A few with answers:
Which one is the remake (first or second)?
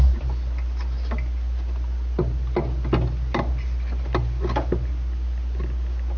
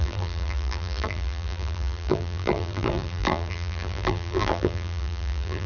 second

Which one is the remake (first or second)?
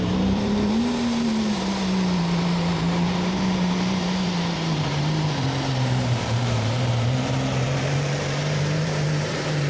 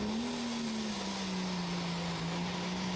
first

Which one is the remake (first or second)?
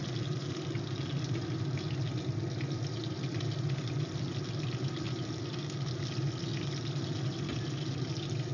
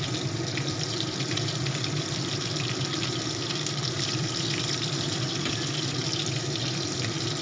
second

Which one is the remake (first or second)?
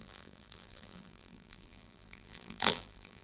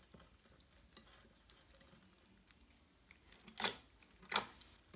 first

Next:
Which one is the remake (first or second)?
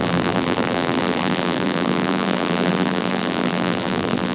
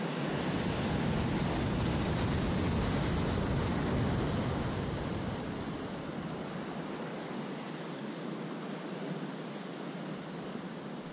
first